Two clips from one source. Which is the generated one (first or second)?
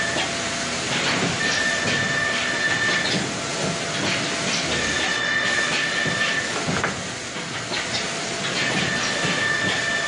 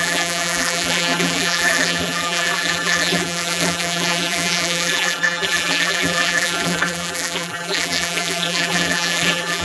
second